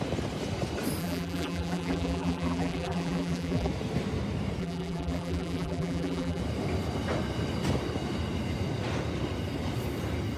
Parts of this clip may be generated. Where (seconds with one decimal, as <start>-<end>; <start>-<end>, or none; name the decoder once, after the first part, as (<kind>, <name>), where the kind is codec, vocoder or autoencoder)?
1.0-3.7 (vocoder, BigVGAN v2); 4.6-6.4